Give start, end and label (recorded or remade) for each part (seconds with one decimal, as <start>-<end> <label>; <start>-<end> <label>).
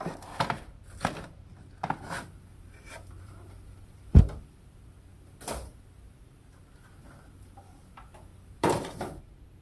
0.0-2.5 recorded; 2.5-4.2 remade; 4.2-8.3 recorded; 8.3-9.6 remade